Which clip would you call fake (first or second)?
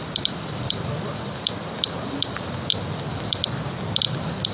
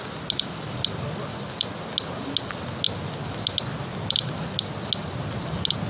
first